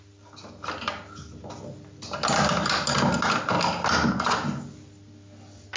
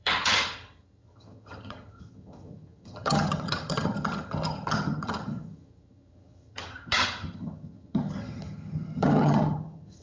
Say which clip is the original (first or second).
first